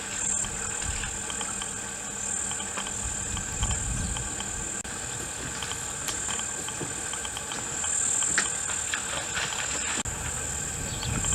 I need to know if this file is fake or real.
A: real